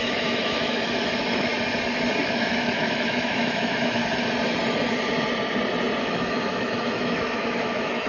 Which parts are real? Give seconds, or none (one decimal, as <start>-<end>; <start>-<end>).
1.5-2.2; 4.0-6.0